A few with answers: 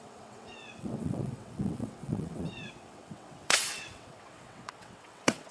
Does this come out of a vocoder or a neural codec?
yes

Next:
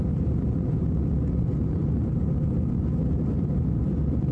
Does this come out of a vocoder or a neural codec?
yes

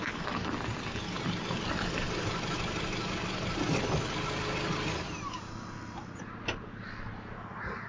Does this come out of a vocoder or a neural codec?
no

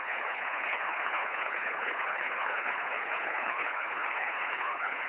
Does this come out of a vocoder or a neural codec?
yes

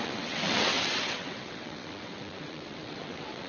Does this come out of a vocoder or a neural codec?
yes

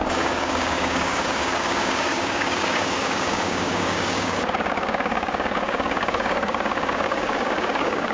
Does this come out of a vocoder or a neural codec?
yes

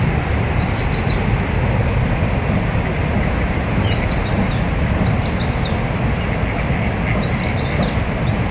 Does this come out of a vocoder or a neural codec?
no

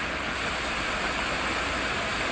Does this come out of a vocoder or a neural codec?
no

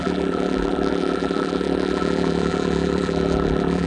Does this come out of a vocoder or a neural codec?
yes